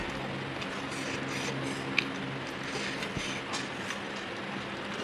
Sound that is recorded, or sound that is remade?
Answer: recorded